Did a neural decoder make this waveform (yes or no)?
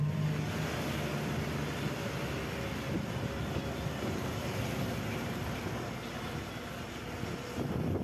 no